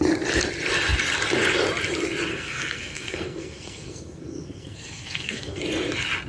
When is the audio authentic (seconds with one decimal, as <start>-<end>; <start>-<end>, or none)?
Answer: 0.0-2.3; 5.6-6.3